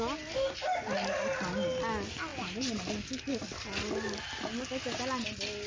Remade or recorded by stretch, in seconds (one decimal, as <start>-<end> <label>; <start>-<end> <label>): 0.0-5.7 recorded